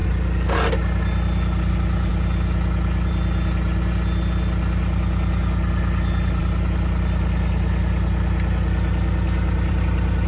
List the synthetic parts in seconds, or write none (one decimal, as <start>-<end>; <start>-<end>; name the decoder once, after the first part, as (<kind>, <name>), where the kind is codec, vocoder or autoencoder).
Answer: none